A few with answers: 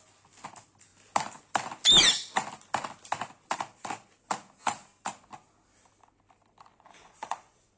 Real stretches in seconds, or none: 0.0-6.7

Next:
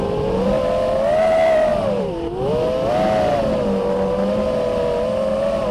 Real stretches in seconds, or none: 0.0-5.7

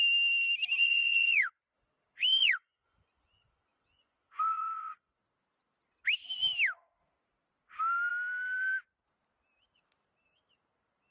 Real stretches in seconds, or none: 0.0-0.8; 1.5-2.3; 5.2-11.1

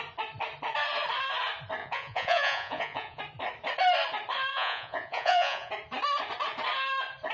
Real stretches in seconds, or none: 0.0-1.8; 3.2-4.5; 5.7-7.3

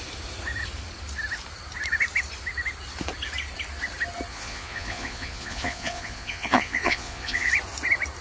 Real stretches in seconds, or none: 0.0-4.3; 7.5-8.2

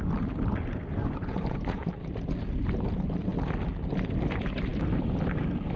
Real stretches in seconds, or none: 0.0-1.0; 1.9-5.8

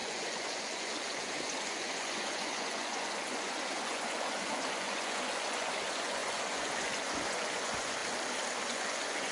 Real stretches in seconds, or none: 8.0-8.6